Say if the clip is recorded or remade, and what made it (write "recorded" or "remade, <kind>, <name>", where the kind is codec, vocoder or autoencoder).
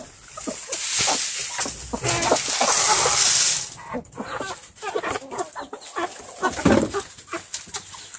recorded